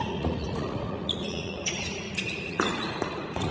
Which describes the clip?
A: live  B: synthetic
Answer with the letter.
B